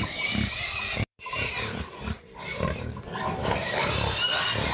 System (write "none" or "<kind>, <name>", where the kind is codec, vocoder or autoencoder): vocoder, BigVGAN v2